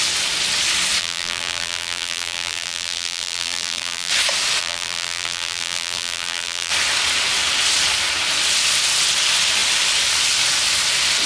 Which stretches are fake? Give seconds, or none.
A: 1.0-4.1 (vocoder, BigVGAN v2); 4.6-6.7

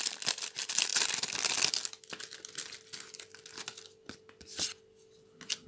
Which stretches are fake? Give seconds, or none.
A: 0.9-4.3 (vocoder, BigVGAN v2)

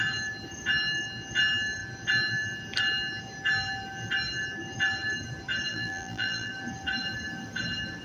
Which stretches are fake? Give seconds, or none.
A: 5.7-6.5 (vocoder, BigVGAN v2)